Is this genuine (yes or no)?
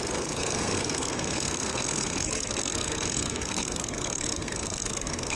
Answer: no